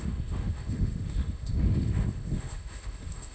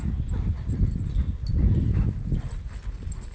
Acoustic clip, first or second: second